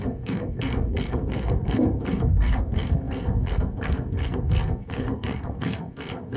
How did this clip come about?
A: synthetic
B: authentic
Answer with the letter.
A